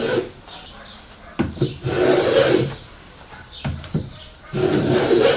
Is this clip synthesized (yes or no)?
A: yes